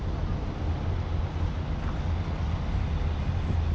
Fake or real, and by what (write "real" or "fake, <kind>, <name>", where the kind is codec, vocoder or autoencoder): real